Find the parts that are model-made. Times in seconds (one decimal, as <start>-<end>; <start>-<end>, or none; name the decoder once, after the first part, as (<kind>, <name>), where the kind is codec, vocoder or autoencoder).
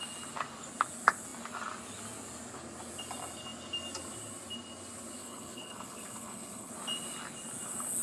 5.2-6.7 (codec, HILCodec)